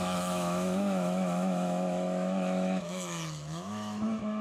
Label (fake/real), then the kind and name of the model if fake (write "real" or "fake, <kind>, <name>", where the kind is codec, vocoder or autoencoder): fake, autoencoder, DAC-VAE